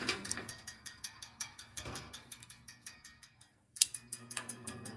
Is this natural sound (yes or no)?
no